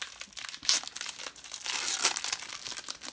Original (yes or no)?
yes